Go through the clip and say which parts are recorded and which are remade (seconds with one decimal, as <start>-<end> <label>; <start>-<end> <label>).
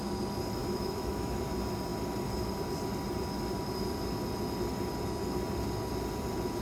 0.0-0.6 recorded; 0.6-1.4 remade; 1.4-6.6 recorded